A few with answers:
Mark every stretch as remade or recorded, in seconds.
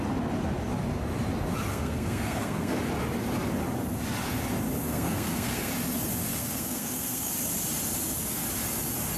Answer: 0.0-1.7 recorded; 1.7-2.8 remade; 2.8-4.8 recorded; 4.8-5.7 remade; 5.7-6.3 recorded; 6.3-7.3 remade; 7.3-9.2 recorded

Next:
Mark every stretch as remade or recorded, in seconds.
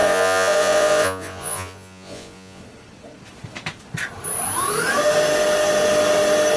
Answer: 0.0-2.6 remade; 2.6-6.6 recorded